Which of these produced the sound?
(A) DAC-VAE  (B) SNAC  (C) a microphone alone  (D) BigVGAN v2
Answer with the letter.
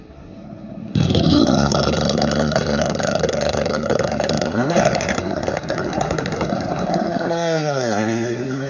B